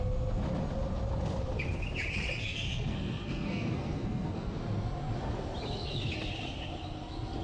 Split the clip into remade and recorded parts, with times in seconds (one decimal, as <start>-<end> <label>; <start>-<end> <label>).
0.0-2.4 recorded; 2.4-4.6 remade; 4.6-7.4 recorded